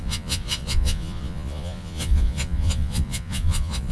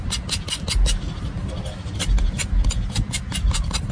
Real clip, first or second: second